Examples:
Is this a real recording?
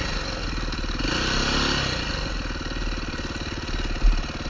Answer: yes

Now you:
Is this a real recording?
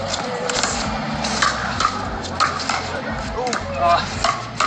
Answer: yes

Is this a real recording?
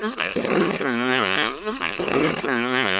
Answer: no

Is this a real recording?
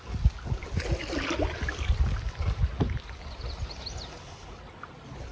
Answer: yes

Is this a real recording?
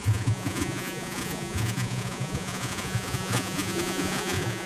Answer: no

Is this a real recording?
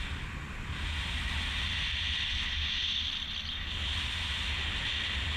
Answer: yes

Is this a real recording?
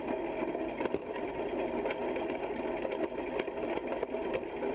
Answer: yes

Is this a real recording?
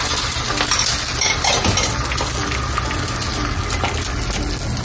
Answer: yes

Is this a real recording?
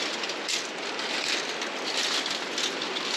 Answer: yes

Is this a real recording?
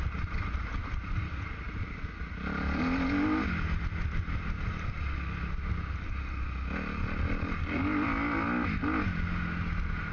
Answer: yes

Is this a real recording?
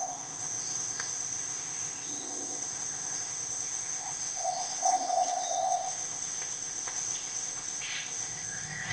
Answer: no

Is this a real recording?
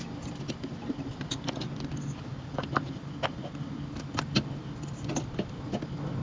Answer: yes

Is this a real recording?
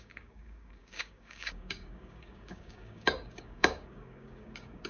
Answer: no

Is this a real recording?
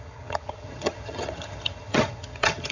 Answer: no